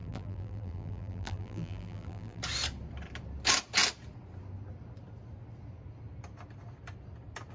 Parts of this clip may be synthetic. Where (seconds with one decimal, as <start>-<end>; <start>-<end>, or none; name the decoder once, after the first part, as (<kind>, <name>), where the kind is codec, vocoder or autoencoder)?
0.0-2.4 (vocoder, BigVGAN v2)